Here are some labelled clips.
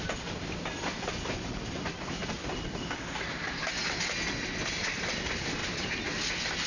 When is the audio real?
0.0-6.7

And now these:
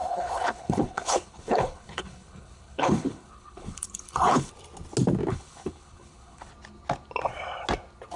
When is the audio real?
4.5-5.3; 6.5-8.2

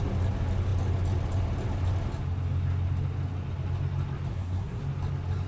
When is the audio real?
0.0-4.3; 4.8-5.5

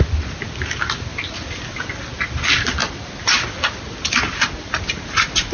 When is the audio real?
0.0-5.5

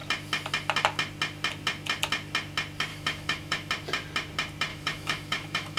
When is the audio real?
0.0-2.9; 3.7-4.7

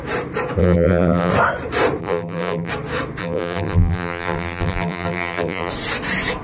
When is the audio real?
0.0-0.6; 1.3-2.0; 2.7-3.2; 5.7-6.4

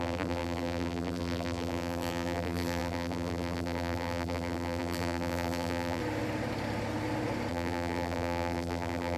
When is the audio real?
6.0-7.5